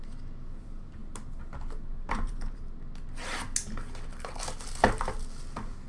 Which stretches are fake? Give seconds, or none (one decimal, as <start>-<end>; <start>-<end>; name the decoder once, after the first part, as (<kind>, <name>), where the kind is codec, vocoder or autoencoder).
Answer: none